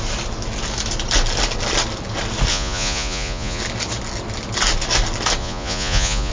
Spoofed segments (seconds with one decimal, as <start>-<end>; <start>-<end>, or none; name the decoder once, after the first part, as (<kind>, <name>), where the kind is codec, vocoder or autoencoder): 2.5-3.6 (vocoder, Vocos); 5.4-6.3